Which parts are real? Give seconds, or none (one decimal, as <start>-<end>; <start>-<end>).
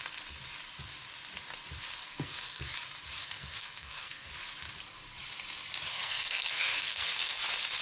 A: 0.0-2.0; 2.6-3.2; 4.3-5.9; 7.3-7.8